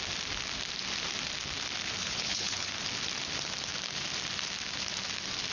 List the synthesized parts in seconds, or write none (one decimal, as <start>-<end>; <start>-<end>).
2.0-2.7